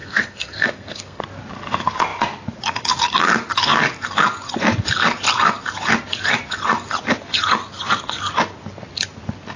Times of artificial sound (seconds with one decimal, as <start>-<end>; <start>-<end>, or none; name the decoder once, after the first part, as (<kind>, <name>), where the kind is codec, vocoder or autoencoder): 0.0-1.2 (codec, SNAC)